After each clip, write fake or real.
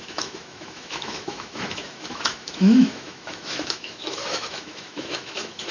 fake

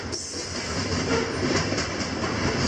real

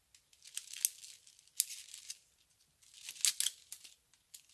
real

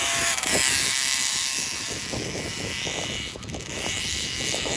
fake